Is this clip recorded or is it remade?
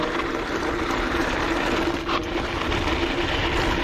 recorded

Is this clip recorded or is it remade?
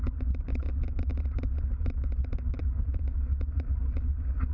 recorded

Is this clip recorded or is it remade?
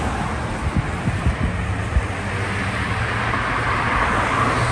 recorded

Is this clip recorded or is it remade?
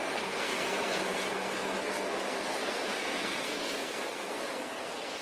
remade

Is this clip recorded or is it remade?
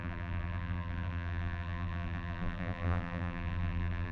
remade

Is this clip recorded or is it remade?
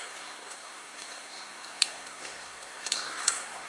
remade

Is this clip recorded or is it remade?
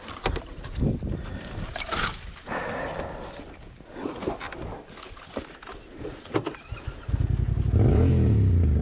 recorded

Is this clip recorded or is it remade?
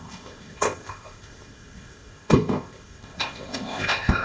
remade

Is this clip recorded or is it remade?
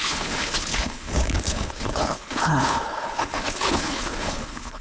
remade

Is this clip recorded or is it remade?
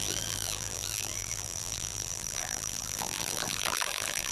remade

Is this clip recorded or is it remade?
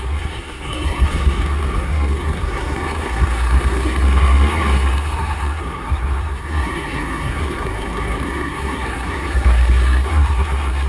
remade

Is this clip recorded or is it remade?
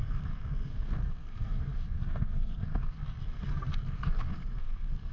remade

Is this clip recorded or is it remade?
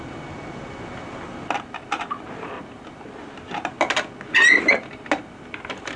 recorded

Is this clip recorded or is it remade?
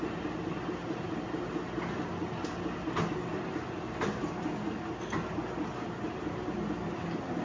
recorded